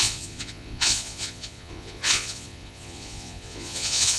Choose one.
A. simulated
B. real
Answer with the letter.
A